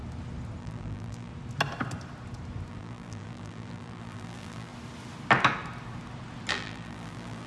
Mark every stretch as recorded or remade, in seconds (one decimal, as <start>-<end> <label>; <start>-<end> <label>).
0.0-0.6 recorded; 0.6-1.3 remade; 1.3-2.7 recorded; 2.7-4.7 remade; 4.7-6.5 recorded; 6.5-7.5 remade